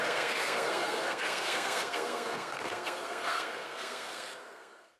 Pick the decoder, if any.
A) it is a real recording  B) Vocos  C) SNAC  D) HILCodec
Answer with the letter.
C